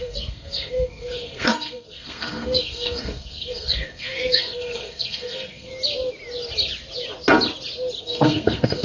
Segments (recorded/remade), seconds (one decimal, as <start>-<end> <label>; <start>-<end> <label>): 0.0-5.7 remade; 5.7-8.0 recorded; 8.0-8.8 remade